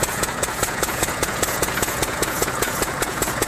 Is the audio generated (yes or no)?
yes